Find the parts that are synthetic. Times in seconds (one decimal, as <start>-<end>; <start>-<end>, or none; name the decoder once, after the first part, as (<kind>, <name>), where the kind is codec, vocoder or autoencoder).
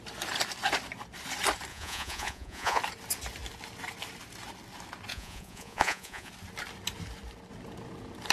1.7-2.8 (vocoder, Vocos); 5.1-6.3